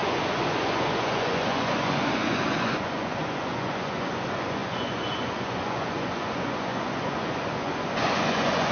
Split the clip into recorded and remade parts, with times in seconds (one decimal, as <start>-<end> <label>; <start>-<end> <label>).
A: 0.0-8.7 remade

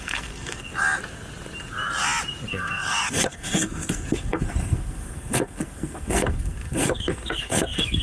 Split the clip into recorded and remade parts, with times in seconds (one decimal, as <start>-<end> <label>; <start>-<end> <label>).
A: 0.0-0.7 remade; 0.7-2.5 recorded; 2.5-8.0 remade

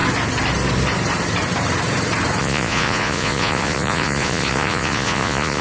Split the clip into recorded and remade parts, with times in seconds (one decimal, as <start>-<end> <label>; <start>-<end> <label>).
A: 0.0-2.4 recorded; 2.4-5.6 remade

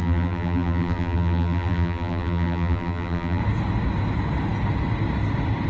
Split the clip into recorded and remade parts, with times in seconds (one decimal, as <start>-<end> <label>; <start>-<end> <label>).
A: 0.0-3.4 remade; 3.4-5.7 recorded

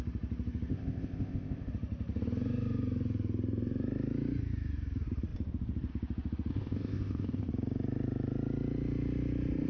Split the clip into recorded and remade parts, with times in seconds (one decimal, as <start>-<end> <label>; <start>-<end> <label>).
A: 0.0-0.7 recorded; 0.7-1.7 remade; 1.7-6.5 recorded; 6.5-7.5 remade; 7.5-9.7 recorded

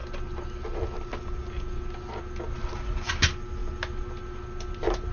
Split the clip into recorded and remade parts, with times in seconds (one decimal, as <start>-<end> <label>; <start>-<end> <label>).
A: 0.0-5.1 recorded

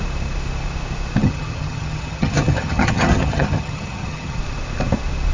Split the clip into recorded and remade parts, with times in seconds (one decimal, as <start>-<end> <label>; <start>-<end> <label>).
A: 0.0-1.2 recorded; 1.2-4.4 remade; 4.4-5.3 recorded